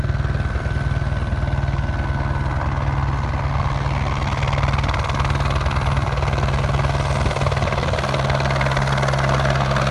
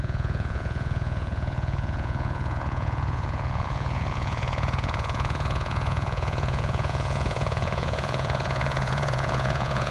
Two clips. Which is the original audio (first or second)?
first